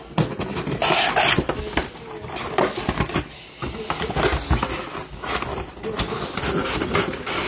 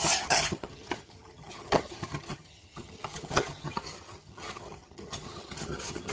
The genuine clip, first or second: first